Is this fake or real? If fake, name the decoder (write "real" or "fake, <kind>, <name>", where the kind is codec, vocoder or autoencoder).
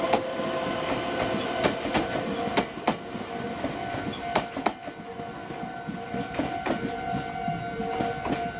real